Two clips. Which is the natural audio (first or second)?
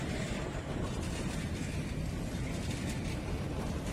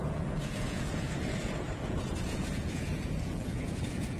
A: first